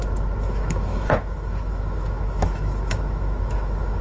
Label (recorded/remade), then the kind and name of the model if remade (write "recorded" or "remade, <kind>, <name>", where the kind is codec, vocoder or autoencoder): remade, autoencoder, DAC-VAE